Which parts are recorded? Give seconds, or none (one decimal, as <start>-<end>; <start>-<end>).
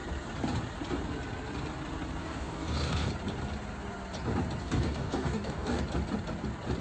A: 0.0-2.2; 3.1-4.6; 5.8-6.8